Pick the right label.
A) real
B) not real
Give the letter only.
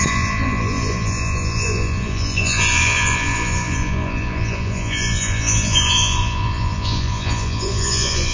B